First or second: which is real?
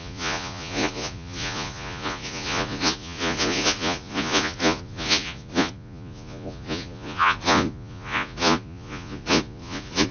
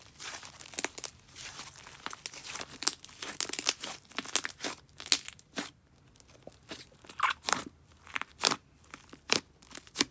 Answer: second